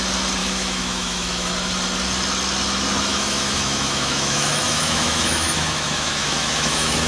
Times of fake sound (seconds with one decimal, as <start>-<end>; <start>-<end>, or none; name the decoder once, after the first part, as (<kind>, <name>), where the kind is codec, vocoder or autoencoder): 0.4-1.5 (autoencoder, DAC-VAE); 3.1-7.1